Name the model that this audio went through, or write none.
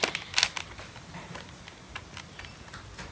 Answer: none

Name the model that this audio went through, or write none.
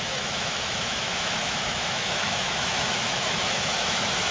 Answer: autoencoder, DAC-VAE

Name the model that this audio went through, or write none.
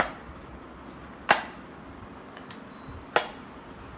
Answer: none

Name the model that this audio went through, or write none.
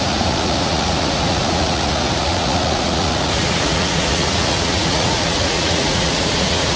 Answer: vocoder, Vocos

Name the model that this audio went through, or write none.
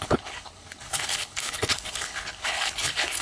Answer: codec, HILCodec